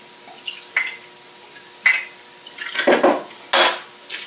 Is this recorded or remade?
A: recorded